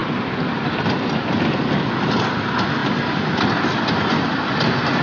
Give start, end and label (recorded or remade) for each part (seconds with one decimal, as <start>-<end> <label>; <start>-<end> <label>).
0.0-5.0 recorded